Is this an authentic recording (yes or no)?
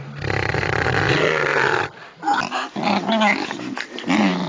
yes